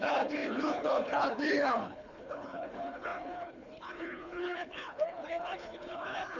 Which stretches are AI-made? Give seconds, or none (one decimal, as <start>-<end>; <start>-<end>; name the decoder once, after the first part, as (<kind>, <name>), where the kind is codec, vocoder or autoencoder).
0.0-6.4 (codec, HILCodec)